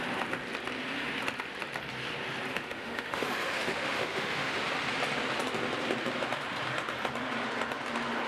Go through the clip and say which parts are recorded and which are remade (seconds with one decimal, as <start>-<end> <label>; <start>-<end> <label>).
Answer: 0.0-2.5 recorded; 2.5-4.6 remade; 4.6-8.3 recorded